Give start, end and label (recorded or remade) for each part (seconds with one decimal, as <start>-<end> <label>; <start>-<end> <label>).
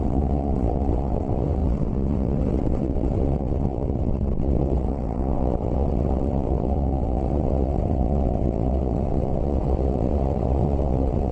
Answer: 0.0-11.3 remade